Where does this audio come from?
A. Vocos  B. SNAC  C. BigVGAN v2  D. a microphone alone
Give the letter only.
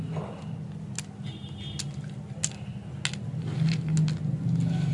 D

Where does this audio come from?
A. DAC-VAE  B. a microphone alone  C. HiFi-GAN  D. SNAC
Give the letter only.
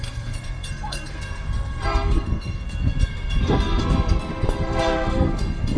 D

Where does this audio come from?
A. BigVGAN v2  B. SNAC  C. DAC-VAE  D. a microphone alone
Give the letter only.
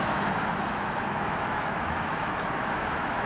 C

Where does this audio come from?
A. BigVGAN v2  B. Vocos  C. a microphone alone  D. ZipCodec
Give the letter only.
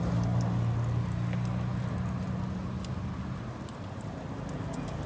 C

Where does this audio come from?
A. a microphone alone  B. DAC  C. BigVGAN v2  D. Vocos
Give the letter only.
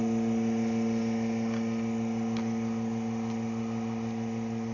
A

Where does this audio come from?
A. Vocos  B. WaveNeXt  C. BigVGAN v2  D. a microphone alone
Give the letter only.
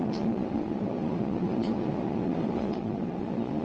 A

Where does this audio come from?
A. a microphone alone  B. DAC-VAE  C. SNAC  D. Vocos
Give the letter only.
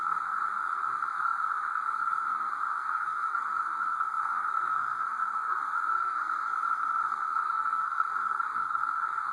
C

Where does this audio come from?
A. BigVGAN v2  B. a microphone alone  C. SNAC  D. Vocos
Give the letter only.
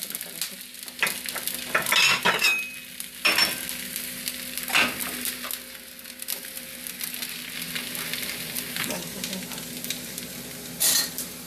B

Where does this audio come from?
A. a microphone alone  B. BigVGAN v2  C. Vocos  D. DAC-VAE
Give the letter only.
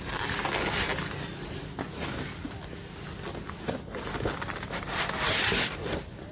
A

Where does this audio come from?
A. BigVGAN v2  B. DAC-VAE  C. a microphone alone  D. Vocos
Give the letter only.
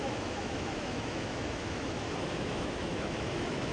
B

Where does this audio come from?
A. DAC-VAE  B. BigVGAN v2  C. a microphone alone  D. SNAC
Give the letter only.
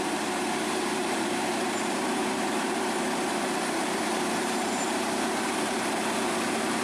B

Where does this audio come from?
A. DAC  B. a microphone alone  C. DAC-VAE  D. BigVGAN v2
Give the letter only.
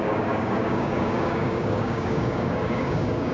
A